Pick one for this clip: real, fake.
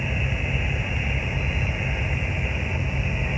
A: real